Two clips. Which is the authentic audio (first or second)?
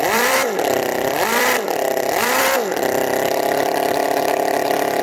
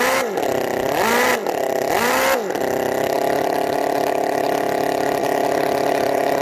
second